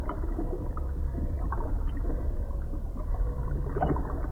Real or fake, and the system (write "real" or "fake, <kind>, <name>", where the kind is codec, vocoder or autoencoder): fake, vocoder, BigVGAN v2